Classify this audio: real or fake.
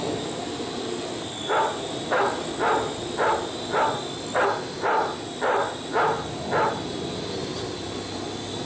real